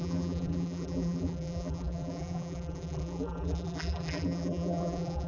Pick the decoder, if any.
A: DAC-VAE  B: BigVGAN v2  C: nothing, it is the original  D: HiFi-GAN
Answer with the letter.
B